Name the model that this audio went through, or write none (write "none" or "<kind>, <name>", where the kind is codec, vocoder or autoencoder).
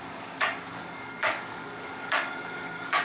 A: codec, DAC